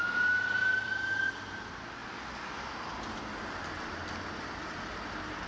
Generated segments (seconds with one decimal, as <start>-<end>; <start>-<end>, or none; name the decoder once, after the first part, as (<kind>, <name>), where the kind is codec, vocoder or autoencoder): 0.6-1.3 (vocoder, BigVGAN v2)